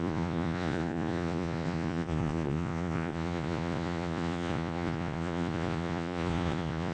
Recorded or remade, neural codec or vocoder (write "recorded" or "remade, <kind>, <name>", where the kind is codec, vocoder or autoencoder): remade, vocoder, Vocos